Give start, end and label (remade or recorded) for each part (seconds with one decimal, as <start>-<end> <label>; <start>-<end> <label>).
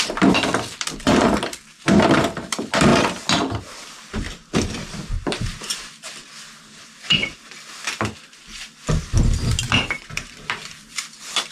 0.0-2.9 remade; 2.9-3.6 recorded; 3.6-7.2 remade; 7.2-9.6 recorded; 9.6-11.5 remade